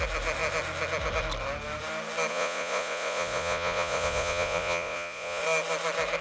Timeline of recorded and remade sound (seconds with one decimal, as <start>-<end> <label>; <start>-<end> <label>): 0.0-2.3 recorded; 2.3-5.4 remade; 5.4-6.2 recorded